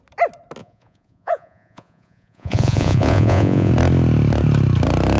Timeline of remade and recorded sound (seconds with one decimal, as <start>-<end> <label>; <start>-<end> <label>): 0.0-0.6 recorded; 0.6-3.7 remade; 3.7-5.2 recorded